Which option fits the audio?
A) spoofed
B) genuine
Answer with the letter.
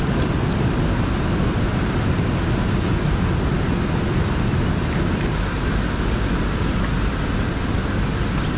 B